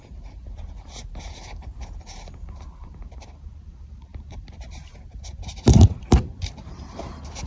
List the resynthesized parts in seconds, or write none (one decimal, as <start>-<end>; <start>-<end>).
0.0-7.5